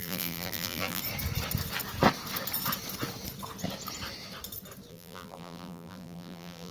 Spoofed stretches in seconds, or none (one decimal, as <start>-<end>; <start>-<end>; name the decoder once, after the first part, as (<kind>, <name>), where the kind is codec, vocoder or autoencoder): 0.0-1.0 (vocoder, BigVGAN v2); 4.9-6.7